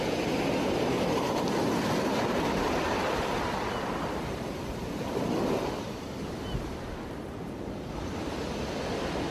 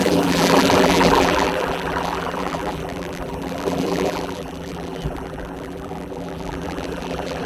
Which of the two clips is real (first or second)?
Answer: first